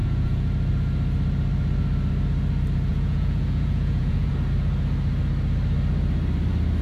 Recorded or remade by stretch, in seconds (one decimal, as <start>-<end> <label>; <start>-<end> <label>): 0.0-0.5 remade; 0.5-2.9 recorded; 2.9-4.3 remade; 4.3-6.8 recorded